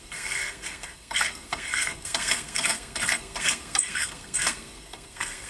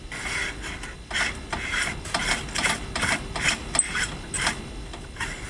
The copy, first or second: first